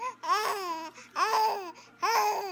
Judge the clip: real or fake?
real